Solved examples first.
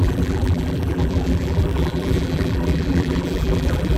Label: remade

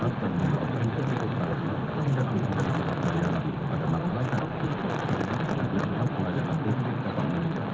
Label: recorded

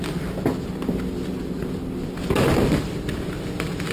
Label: recorded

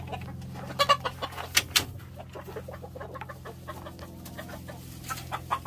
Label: recorded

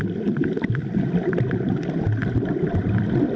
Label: remade